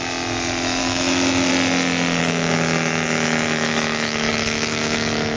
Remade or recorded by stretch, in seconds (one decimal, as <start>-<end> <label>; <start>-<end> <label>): 0.0-0.8 recorded; 0.8-1.5 remade; 1.5-2.2 recorded; 2.2-5.4 remade